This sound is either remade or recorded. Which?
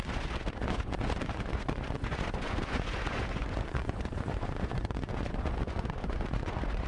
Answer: remade